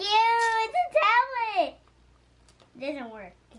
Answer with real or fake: real